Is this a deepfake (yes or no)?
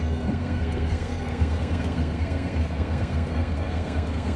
yes